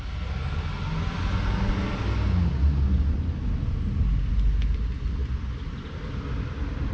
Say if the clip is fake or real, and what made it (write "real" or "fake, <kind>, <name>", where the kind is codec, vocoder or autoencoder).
real